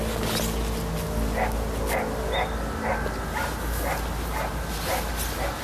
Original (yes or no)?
yes